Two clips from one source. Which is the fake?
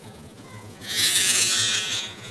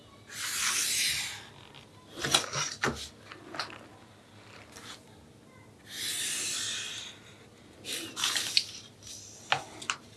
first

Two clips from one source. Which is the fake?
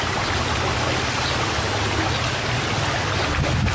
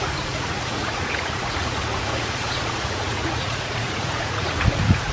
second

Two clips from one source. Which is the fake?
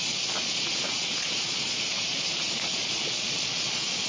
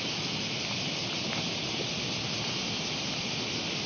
first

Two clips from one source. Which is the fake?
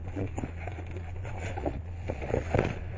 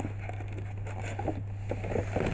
first